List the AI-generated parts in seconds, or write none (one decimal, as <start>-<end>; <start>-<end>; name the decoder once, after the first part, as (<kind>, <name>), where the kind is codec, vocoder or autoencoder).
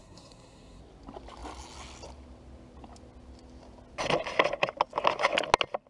0.0-0.8 (codec, SNAC)